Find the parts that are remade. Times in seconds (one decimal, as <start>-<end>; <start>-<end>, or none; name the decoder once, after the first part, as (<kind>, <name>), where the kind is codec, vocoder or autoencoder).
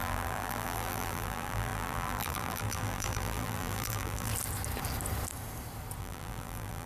0.0-4.3 (vocoder, BigVGAN v2); 6.0-6.9